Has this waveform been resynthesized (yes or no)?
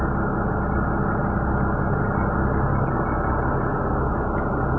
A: no